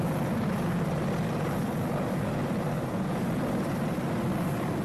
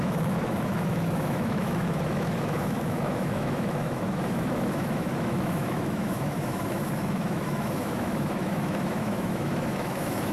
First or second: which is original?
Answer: first